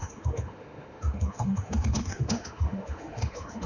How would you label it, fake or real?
fake